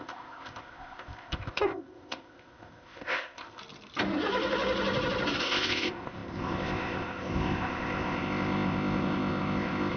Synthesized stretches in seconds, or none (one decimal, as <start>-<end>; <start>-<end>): 0.0-3.6; 5.4-10.0